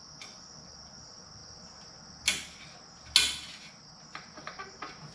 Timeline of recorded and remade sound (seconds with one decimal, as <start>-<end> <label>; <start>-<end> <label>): 0.0-0.8 remade; 0.8-5.1 recorded